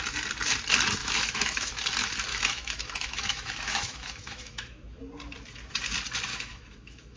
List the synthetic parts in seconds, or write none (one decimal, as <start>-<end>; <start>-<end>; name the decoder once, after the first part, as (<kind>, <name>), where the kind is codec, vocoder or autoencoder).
1.0-1.7 (autoencoder, DAC-VAE); 2.3-5.0; 6.3-7.2